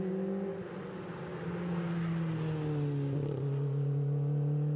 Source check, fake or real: real